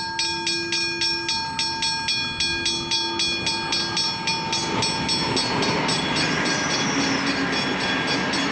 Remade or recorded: recorded